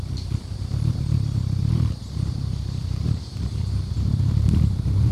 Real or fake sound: fake